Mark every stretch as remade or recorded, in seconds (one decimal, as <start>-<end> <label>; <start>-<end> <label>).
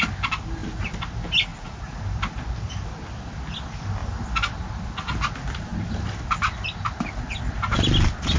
0.0-1.5 recorded; 1.5-2.0 remade; 2.0-8.4 recorded